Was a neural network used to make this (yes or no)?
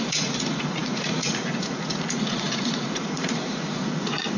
yes